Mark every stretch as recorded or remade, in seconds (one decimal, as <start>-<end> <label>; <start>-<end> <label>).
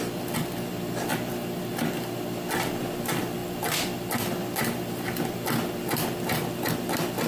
0.0-1.1 recorded; 1.1-1.9 remade; 1.9-7.3 recorded